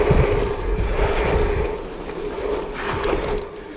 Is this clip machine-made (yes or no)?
no